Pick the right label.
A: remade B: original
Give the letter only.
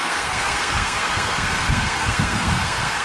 A